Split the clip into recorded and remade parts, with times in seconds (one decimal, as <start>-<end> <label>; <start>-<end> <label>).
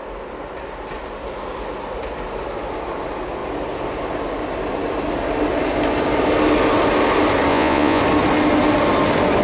0.0-7.5 recorded; 7.5-8.0 remade; 8.0-9.4 recorded